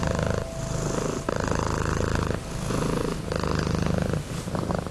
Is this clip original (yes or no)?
yes